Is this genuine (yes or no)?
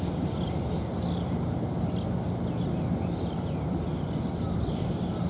yes